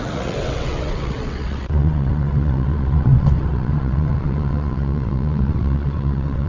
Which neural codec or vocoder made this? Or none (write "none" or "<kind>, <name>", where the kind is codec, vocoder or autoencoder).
vocoder, WaveNeXt